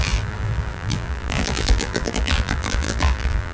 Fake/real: fake